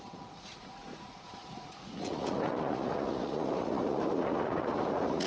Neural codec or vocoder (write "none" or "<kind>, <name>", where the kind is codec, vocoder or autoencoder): vocoder, Vocos